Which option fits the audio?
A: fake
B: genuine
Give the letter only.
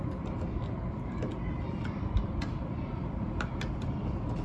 A